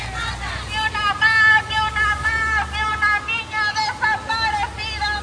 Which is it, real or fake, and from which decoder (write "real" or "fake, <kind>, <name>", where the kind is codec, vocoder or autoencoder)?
real